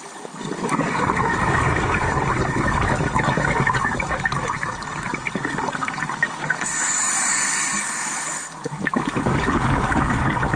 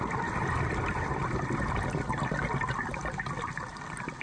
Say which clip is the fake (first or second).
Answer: first